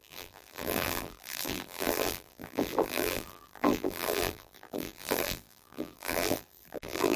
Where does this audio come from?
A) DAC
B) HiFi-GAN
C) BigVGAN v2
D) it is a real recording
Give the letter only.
C